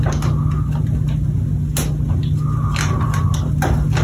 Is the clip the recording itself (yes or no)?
yes